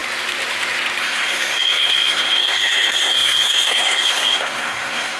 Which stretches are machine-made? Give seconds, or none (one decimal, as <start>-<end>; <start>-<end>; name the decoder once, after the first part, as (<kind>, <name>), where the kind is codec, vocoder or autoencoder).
1.0-5.2 (codec, SNAC)